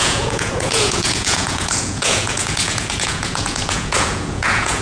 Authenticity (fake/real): fake